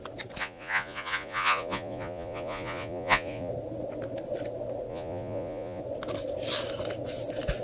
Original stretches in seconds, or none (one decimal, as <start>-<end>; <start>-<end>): 0.0-0.4; 3.5-4.9; 5.8-7.6